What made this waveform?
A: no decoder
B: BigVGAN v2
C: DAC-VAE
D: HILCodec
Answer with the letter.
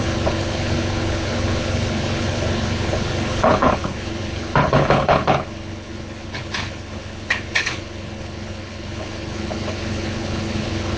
D